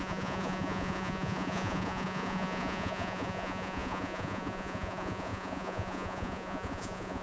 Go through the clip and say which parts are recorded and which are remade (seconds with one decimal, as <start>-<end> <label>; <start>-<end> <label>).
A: 0.0-7.2 remade